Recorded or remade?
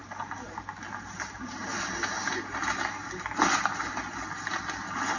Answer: recorded